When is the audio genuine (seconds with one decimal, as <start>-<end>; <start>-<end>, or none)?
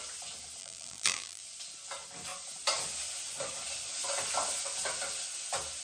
0.0-0.6; 1.4-5.8